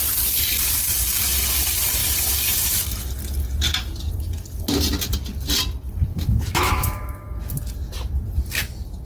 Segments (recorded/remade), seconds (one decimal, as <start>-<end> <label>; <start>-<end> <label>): 0.0-6.1 recorded; 6.1-7.4 remade; 7.4-9.0 recorded